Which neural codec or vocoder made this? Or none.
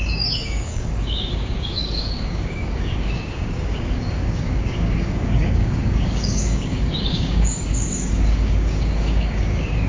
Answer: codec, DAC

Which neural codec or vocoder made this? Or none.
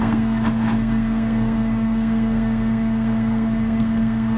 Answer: codec, SNAC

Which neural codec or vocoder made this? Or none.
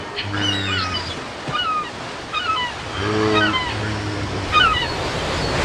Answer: none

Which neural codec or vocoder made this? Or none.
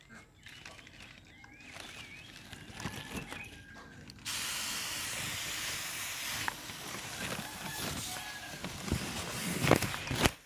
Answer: none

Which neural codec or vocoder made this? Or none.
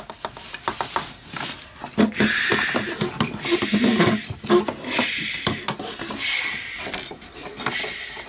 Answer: none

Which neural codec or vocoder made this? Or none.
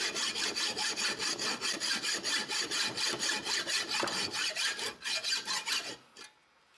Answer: none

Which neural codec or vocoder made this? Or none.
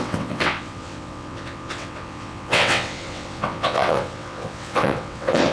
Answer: vocoder, WaveNeXt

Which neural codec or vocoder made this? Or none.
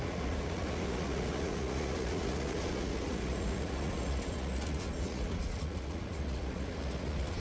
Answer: vocoder, Vocos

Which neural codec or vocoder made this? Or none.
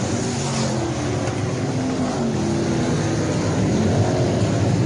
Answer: none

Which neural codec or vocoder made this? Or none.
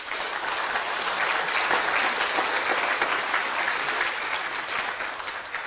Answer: none